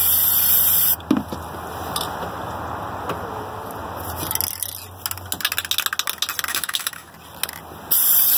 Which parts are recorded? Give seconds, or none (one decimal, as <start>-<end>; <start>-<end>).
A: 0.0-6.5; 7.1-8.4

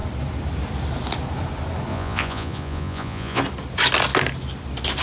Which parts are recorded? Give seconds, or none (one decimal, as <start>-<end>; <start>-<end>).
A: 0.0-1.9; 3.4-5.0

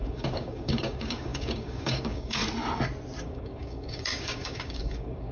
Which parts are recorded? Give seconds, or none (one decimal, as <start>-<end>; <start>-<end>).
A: 2.4-3.2

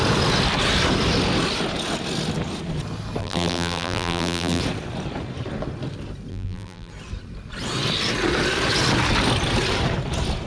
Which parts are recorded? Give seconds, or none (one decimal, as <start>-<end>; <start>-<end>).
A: 0.0-3.2; 4.6-6.3; 6.9-10.5

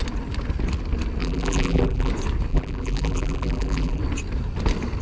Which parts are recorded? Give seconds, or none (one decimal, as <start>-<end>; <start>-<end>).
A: 0.0-1.2; 2.1-2.5; 4.0-5.0

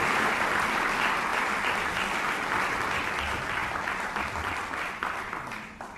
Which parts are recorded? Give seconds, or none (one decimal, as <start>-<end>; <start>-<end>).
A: 0.0-6.0

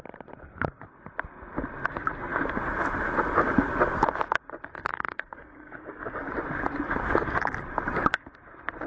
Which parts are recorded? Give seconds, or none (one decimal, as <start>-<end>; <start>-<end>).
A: 0.0-4.9; 6.2-8.9

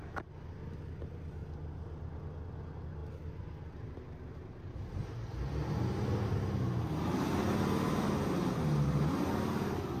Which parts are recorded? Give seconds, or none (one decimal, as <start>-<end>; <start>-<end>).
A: 0.0-10.0